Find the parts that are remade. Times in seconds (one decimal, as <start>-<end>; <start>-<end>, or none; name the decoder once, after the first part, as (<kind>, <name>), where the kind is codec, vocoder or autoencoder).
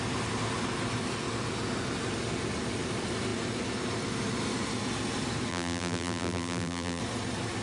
5.5-7.0 (vocoder, BigVGAN v2)